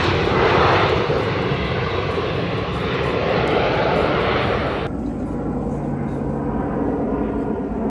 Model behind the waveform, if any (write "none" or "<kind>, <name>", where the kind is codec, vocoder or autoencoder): none